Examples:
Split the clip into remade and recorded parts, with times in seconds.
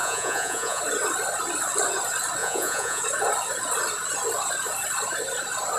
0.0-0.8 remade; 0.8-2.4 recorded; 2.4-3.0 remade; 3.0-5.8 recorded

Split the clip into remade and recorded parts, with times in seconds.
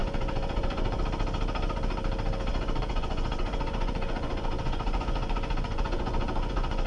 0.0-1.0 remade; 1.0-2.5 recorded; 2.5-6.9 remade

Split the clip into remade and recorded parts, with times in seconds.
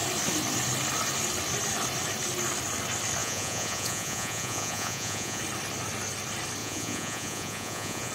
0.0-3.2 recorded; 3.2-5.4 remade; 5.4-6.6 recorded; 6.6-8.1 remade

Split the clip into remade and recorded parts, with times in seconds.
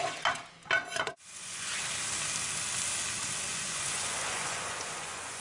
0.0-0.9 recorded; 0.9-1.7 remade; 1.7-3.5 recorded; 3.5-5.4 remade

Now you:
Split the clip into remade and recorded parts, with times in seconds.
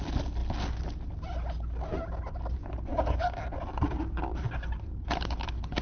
0.0-5.8 recorded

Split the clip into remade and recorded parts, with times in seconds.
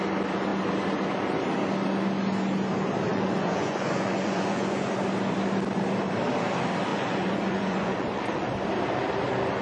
0.0-3.1 recorded; 3.1-4.9 remade; 4.9-6.9 recorded; 6.9-8.5 remade; 8.5-9.6 recorded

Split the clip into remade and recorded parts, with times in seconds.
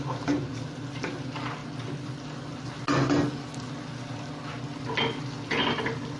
0.0-6.2 recorded